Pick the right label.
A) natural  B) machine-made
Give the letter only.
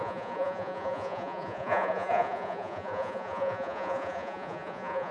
B